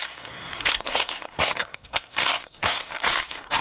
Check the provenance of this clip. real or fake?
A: fake